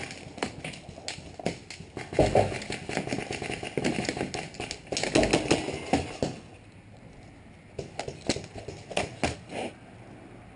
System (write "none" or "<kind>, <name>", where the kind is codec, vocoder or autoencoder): none